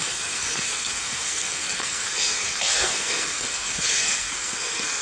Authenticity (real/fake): fake